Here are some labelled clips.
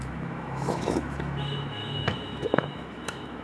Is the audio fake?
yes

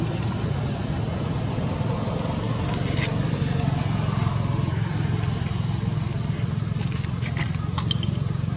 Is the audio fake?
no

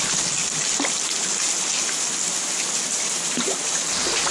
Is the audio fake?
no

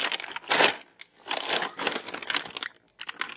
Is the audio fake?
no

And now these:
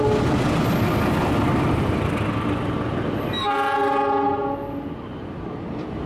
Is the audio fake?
no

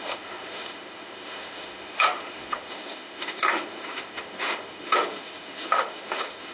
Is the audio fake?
yes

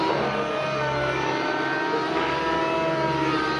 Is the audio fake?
no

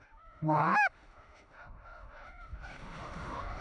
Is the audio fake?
yes